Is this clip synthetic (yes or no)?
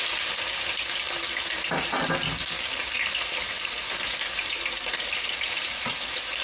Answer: no